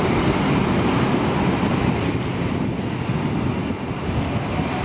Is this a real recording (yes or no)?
yes